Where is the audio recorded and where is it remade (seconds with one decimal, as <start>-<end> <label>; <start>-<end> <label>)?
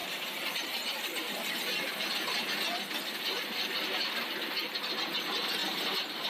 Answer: 0.0-1.5 remade; 1.5-5.6 recorded; 5.6-6.3 remade